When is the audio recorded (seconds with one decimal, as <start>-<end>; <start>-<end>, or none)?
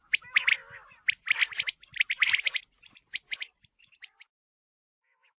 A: 0.5-3.7